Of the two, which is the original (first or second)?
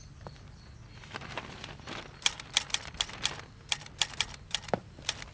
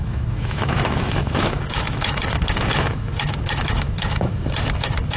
first